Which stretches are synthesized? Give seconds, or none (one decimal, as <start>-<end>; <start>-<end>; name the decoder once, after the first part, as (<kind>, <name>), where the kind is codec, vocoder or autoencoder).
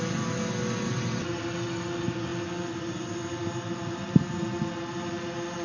none